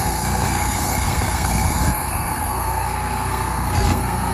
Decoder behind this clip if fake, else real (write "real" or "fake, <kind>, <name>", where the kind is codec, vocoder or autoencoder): fake, codec, SNAC